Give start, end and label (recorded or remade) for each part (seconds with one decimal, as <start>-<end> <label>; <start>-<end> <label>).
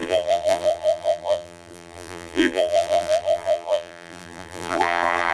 0.0-5.3 remade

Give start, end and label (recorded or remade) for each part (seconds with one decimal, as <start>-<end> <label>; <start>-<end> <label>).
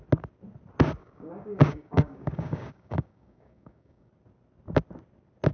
0.0-1.0 recorded; 1.0-4.1 remade; 4.1-5.5 recorded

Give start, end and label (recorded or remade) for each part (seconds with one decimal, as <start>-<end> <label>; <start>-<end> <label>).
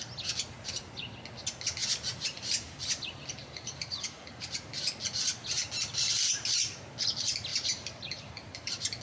0.0-1.8 recorded; 1.8-4.7 remade; 4.7-7.5 recorded; 7.5-9.0 remade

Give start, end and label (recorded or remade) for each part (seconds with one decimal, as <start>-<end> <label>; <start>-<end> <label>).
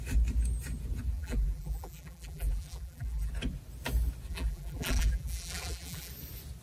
0.0-1.1 recorded; 1.1-3.3 remade; 3.3-4.3 recorded; 4.3-6.1 remade; 6.1-6.6 recorded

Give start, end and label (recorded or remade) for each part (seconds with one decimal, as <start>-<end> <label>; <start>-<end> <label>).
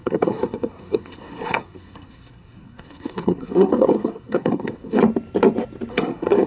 0.0-5.0 remade; 5.0-5.9 recorded; 5.9-6.5 remade